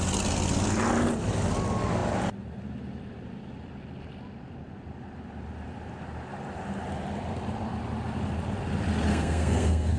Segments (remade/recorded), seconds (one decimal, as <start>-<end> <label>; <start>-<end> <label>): 0.0-9.1 recorded; 9.1-10.0 remade